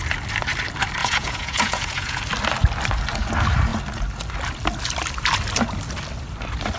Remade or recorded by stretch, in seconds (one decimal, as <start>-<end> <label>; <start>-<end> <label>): 0.0-1.0 recorded; 1.0-2.2 remade; 2.2-6.8 recorded